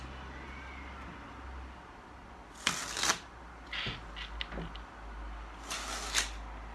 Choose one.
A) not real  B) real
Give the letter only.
B